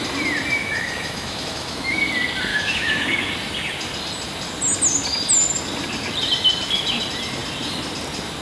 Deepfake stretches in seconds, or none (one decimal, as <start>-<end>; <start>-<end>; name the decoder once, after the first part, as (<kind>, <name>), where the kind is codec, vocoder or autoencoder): 0.6-2.0 (autoencoder, DAC-VAE); 2.5-3.3